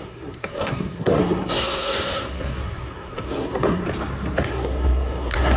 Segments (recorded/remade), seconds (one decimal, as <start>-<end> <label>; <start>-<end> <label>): 0.0-3.8 remade; 3.8-4.4 recorded; 4.4-5.6 remade